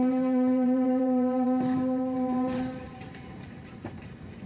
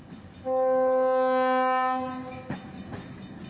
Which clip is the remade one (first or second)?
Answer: first